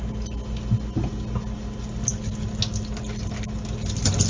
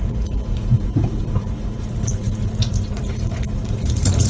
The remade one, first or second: second